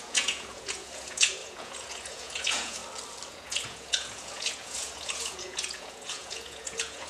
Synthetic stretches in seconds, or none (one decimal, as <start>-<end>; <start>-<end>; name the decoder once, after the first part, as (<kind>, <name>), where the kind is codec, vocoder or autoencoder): 0.0-2.8 (vocoder, Vocos); 3.3-7.1